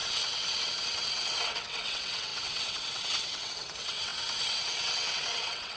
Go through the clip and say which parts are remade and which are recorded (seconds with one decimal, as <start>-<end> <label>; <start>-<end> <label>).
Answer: 0.0-5.8 remade